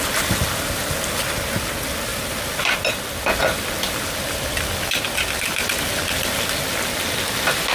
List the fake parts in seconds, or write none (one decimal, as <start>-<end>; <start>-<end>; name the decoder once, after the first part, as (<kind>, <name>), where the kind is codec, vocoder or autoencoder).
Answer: none